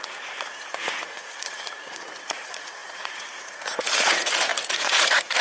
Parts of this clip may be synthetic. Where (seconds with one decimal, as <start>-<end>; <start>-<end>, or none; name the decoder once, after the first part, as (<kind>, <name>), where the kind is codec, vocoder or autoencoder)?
0.0-5.4 (vocoder, Vocos)